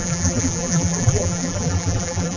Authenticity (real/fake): fake